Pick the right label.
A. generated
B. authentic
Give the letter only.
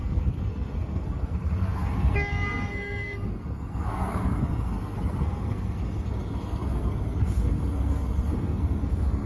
A